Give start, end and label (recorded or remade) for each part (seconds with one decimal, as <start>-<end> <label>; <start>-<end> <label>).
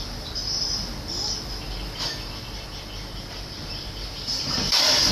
0.0-0.4 remade; 0.4-3.3 recorded; 3.3-5.1 remade